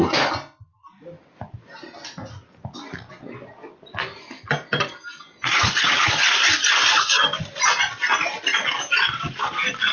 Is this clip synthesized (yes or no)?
no